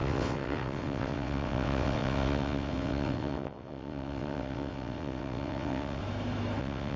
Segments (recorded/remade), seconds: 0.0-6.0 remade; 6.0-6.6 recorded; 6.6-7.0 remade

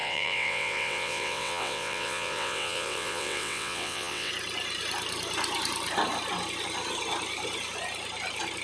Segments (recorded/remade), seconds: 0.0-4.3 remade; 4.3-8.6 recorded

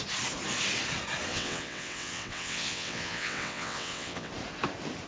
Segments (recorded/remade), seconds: 0.0-1.3 recorded; 1.3-4.3 remade; 4.3-5.1 recorded

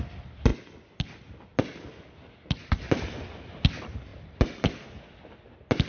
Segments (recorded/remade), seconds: 0.0-5.9 recorded

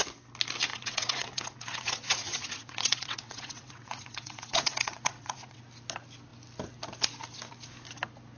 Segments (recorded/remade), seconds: 0.0-0.7 recorded; 0.7-5.6 remade; 5.6-8.4 recorded

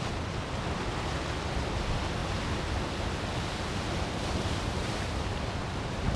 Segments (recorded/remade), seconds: 0.0-6.2 recorded